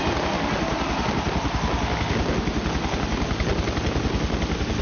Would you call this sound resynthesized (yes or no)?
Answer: no